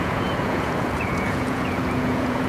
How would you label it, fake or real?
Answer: fake